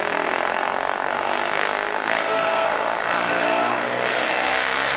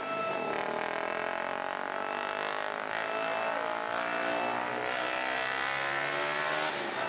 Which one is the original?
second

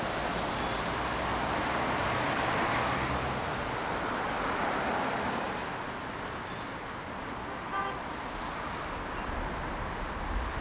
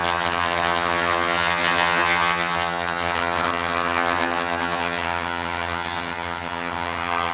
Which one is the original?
first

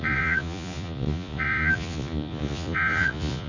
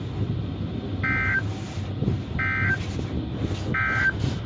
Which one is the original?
second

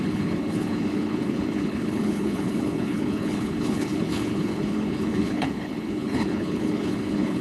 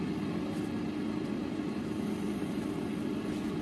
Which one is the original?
second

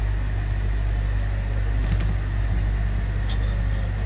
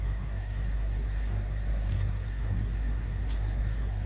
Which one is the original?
first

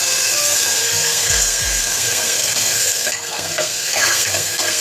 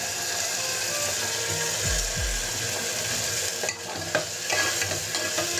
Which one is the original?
second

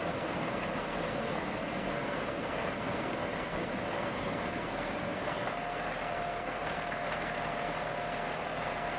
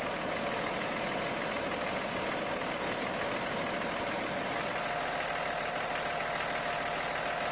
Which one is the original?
second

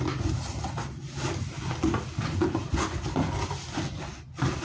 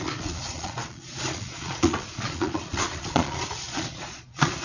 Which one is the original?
first